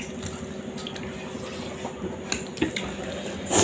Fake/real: real